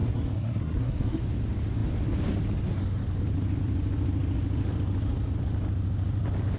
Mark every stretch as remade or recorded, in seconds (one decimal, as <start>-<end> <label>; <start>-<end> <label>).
0.0-1.2 remade; 1.2-6.6 recorded